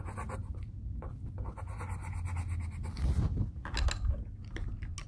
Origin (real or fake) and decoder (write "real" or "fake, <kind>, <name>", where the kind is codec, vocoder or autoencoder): real